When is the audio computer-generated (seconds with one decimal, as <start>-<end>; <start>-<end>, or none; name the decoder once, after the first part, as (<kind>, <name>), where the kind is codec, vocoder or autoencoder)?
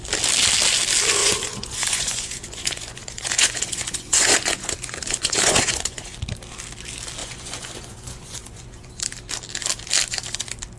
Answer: 1.2-6.2 (vocoder, Vocos); 7.2-9.0